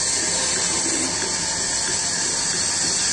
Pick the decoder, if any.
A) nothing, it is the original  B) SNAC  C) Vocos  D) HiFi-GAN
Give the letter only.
A